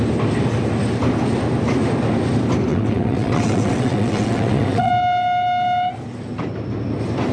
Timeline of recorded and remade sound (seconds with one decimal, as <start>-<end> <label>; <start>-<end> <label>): 0.0-2.7 recorded; 2.7-4.9 remade; 4.9-7.3 recorded